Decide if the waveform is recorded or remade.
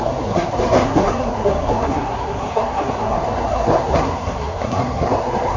remade